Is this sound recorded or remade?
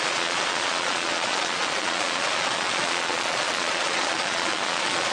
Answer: remade